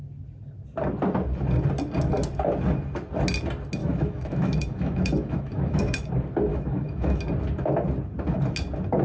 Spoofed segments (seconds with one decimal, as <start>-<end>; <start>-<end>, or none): 3.8-6.1; 6.5-7.2